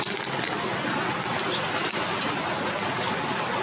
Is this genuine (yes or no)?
yes